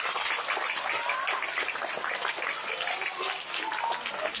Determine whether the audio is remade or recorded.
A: recorded